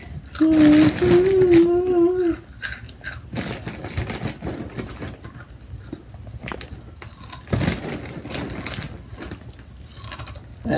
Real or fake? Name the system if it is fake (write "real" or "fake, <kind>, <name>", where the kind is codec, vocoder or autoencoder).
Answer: real